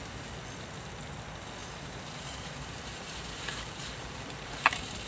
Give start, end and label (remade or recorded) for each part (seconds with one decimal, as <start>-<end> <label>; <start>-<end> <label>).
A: 0.0-1.6 recorded; 1.6-5.1 remade